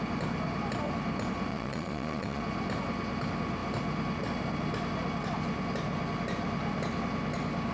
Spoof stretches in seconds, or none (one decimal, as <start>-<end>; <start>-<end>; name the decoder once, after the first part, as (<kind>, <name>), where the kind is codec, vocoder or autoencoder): 1.5-2.4 (vocoder, Vocos)